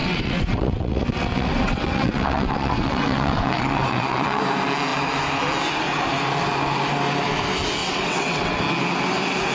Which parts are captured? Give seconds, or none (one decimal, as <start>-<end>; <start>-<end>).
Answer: 4.4-7.8; 8.6-9.5